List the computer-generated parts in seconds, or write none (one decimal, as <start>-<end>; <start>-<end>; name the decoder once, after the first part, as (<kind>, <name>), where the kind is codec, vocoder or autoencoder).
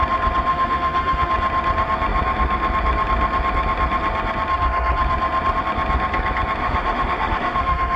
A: 0.5-1.3 (autoencoder, DAC-VAE); 6.6-8.0